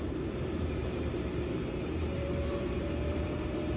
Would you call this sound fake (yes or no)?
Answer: yes